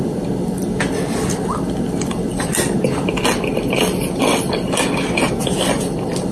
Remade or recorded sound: recorded